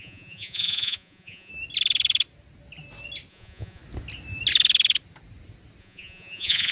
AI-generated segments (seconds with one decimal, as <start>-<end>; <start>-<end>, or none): 0.0-1.5; 3.3-3.8; 5.8-6.7